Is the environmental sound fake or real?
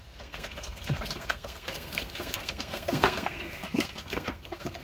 fake